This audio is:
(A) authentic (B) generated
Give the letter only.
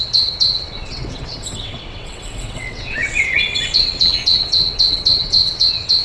B